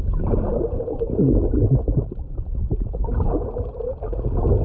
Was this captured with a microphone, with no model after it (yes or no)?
yes